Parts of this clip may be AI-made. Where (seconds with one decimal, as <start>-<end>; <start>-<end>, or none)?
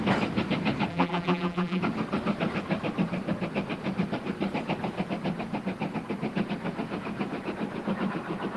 0.9-1.8